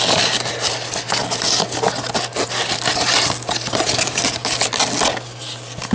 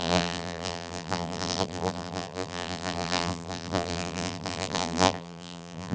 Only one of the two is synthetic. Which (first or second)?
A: second